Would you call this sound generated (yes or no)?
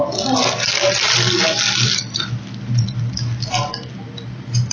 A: no